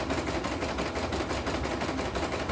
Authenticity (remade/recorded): recorded